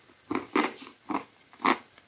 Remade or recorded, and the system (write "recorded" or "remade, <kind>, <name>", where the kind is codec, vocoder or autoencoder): recorded